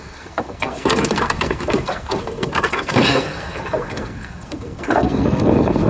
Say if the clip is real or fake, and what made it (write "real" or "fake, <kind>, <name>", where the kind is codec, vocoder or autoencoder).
fake, codec, SNAC